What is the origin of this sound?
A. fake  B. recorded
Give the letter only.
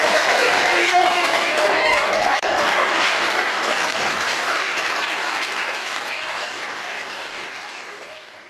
A